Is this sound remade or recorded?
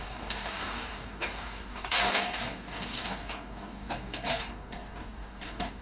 remade